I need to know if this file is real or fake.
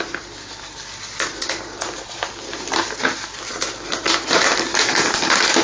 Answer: real